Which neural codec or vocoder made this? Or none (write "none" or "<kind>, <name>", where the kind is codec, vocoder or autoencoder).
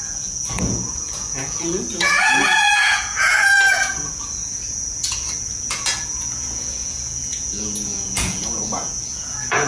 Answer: vocoder, Vocos